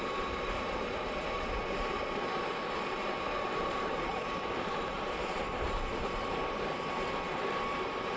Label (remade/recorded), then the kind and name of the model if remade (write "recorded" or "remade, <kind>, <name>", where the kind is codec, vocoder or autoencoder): remade, vocoder, BigVGAN v2